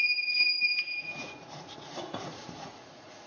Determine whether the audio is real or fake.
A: fake